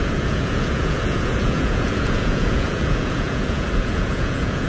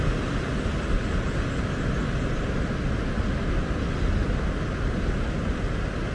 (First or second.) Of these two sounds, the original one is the second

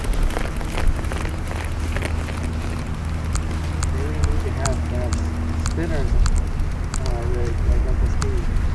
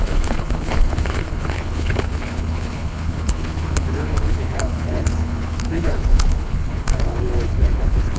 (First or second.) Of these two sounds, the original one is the first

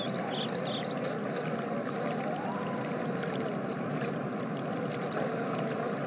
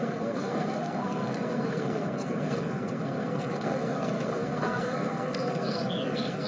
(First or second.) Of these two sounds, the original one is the first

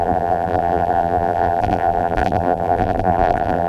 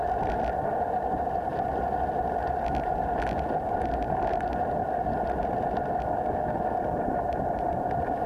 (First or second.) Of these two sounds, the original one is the second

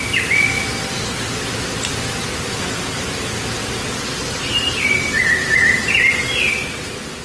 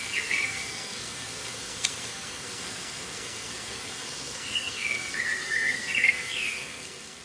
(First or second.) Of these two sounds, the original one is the first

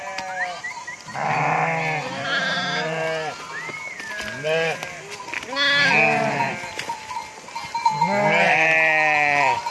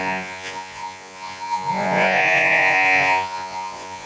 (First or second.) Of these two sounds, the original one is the first